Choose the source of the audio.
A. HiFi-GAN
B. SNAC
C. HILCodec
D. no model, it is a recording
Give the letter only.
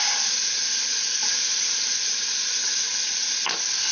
D